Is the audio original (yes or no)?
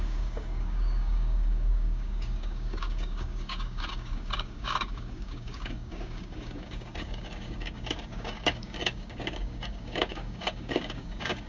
no